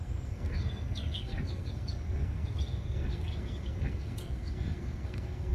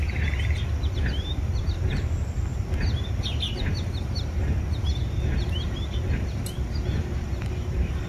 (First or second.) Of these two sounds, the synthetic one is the first